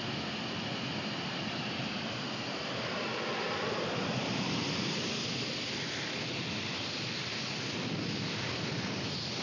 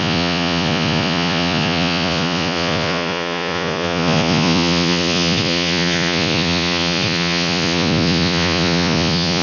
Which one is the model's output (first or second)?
second